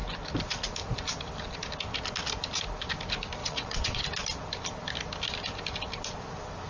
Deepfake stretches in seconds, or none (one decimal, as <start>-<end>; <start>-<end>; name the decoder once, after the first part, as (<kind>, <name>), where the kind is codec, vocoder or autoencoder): 3.4-4.0 (vocoder, WaveNeXt)